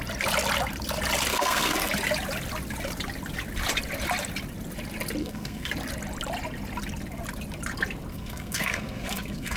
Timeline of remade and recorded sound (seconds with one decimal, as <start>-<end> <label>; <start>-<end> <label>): 0.0-1.3 recorded; 1.3-1.9 remade; 1.9-5.2 recorded; 5.2-5.7 remade; 5.7-8.1 recorded; 8.1-9.6 remade

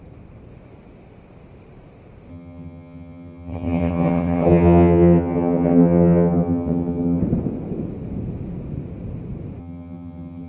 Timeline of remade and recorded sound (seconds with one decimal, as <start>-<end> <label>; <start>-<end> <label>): 0.0-2.3 recorded; 2.3-7.2 remade; 7.2-9.6 recorded; 9.6-10.5 remade

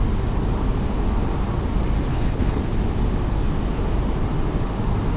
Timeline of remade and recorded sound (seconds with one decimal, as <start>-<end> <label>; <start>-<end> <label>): 0.0-2.1 recorded; 2.1-2.6 remade; 2.6-5.2 recorded

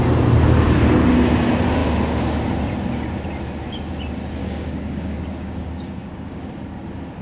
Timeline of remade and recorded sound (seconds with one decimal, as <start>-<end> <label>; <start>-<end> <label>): 0.0-4.4 recorded; 4.4-6.5 remade; 6.5-7.2 recorded